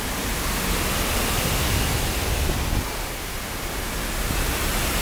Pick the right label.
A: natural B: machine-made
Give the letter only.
A